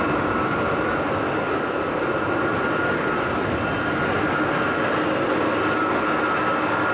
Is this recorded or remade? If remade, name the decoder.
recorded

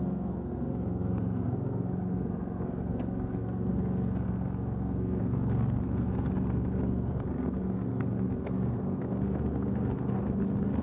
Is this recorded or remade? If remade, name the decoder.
remade, codec, SNAC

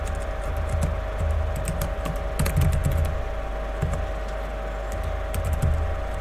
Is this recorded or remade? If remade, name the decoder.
recorded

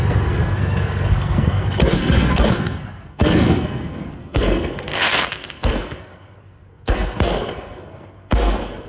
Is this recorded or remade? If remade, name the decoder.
remade, codec, SNAC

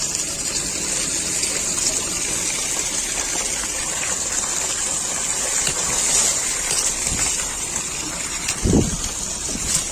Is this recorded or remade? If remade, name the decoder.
recorded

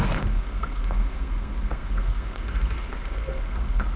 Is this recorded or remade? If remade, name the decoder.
remade, codec, SNAC